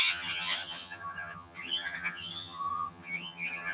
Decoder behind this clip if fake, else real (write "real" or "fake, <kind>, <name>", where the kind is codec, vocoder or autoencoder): fake, vocoder, HiFi-GAN